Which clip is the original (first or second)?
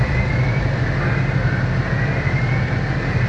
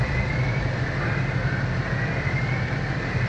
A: first